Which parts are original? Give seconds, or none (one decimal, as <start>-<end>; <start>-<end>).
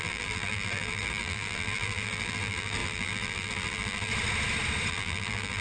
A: 4.1-4.9